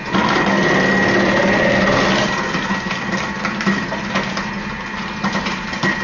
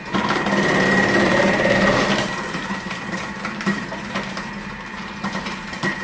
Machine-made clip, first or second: second